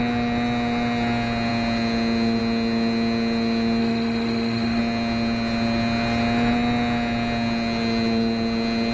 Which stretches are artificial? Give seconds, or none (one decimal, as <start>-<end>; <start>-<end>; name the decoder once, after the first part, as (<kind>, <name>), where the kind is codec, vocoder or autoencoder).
3.8-4.8 (autoencoder, DAC-VAE)